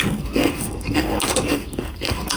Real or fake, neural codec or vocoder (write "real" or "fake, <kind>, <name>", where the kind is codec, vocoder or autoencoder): fake, codec, SNAC